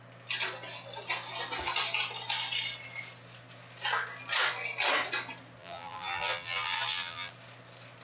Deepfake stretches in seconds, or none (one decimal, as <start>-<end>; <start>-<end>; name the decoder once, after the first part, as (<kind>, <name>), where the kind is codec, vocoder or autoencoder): 5.6-7.3 (vocoder, BigVGAN v2)